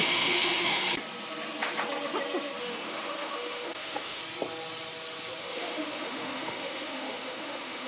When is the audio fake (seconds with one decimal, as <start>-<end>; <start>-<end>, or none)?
0.0-0.8; 2.6-4.2; 5.4-7.9